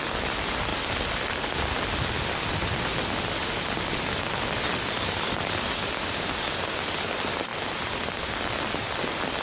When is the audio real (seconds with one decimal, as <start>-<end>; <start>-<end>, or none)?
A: 0.0-7.5; 8.3-9.4